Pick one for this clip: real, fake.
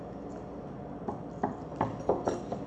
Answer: real